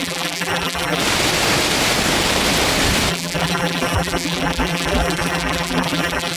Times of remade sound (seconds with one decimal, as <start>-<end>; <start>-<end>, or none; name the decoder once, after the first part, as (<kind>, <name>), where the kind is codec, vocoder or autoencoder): 0.0-1.0 (vocoder, BigVGAN v2); 3.1-6.4